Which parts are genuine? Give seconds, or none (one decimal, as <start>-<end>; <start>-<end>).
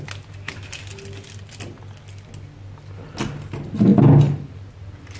0.0-5.2